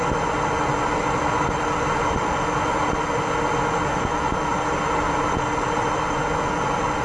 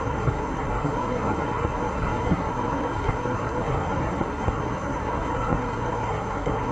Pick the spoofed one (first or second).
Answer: second